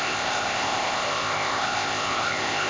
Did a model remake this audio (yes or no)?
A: yes